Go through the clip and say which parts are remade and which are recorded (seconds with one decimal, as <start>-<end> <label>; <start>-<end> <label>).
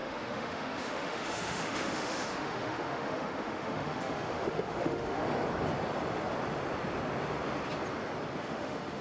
0.0-5.2 remade; 5.2-8.4 recorded; 8.4-9.0 remade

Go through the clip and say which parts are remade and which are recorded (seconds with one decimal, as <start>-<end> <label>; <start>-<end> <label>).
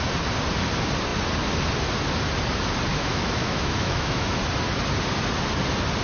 0.0-2.9 recorded; 2.9-4.4 remade; 4.4-6.0 recorded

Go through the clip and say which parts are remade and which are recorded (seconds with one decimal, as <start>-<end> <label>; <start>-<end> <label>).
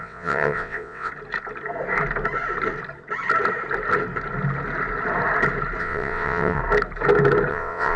0.0-1.1 remade; 1.1-5.8 recorded; 5.8-6.6 remade; 6.6-7.5 recorded; 7.5-8.0 remade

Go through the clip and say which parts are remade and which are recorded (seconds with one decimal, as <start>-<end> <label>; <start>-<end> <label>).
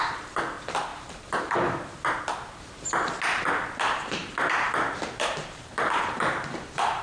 0.0-0.9 recorded; 0.9-2.2 remade; 2.2-4.2 recorded; 4.2-7.0 remade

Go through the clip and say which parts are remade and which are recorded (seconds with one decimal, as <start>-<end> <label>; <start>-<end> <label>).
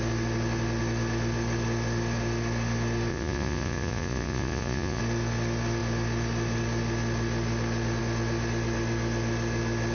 0.0-3.1 recorded; 3.1-5.0 remade; 5.0-9.9 recorded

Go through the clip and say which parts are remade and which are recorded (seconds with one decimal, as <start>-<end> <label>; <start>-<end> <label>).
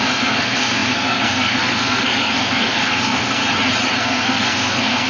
0.0-3.4 remade; 3.4-4.0 recorded; 4.0-5.1 remade